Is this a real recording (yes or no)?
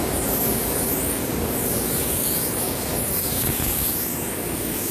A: no